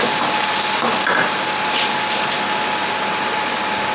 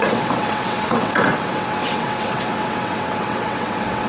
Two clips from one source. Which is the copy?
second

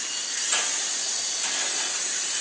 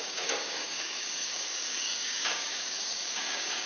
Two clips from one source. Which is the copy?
second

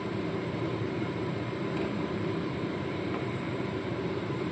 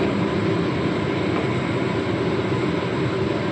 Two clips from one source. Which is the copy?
first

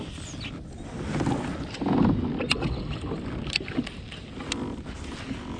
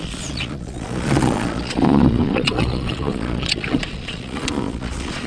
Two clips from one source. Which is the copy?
second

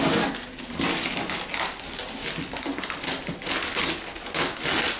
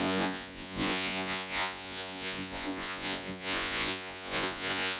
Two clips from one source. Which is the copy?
second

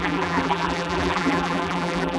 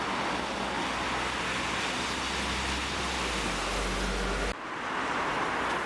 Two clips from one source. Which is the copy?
first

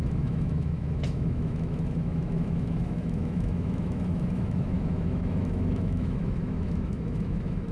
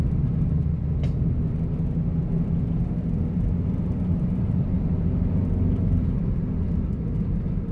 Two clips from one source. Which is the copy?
first